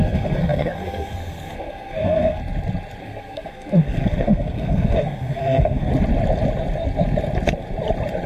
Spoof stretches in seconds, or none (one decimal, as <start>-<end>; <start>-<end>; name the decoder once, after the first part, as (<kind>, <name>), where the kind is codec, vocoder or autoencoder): 0.0-2.4 (codec, SNAC); 3.0-5.9